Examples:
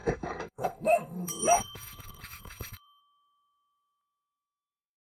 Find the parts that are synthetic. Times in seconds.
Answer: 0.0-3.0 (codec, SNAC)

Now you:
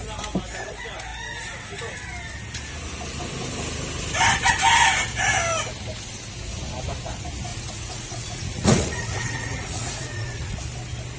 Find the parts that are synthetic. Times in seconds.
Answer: 7.5-10.6 (vocoder, Vocos)

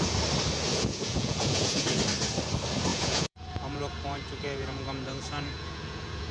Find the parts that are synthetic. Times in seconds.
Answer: 0.7-2.0 (vocoder, Vocos); 2.9-6.3

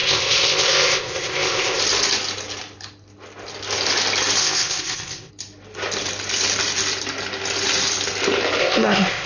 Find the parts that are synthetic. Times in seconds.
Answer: 0.0-1.8 (codec, ZipCodec); 4.4-5.3; 8.6-9.3

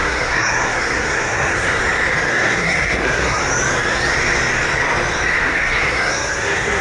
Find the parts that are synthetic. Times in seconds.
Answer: 0.0-1.8 (codec, SNAC); 2.3-3.4; 5.4-6.8